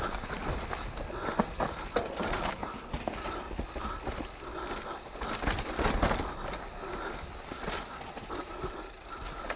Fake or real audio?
real